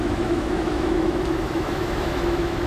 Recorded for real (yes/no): no